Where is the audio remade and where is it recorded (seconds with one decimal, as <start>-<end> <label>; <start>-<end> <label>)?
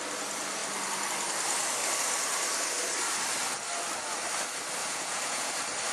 0.0-4.8 recorded; 4.8-5.5 remade; 5.5-5.9 recorded